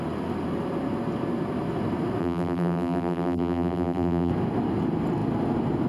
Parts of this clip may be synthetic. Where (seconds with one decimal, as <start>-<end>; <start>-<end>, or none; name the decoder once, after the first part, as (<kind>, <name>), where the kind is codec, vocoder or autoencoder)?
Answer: 2.2-4.3 (vocoder, BigVGAN v2)

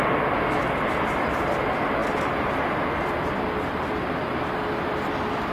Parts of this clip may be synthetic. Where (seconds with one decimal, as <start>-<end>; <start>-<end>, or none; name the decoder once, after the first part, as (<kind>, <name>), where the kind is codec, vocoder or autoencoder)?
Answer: none